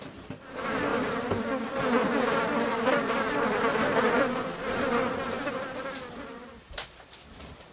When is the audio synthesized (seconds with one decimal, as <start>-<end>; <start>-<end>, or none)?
none